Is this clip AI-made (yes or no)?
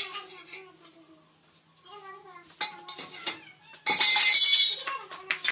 no